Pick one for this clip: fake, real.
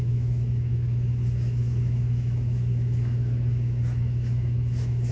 fake